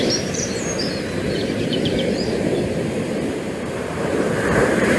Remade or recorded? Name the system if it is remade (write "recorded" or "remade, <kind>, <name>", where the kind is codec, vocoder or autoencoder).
remade, vocoder, BigVGAN v2